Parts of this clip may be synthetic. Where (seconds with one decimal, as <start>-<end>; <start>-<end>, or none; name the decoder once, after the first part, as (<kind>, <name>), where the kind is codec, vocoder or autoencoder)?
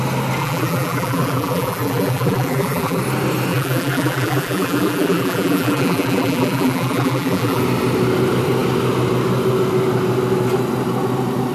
0.4-3.0 (vocoder, BigVGAN v2); 3.5-7.6